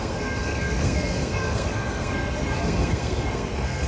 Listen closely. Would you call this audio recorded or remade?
remade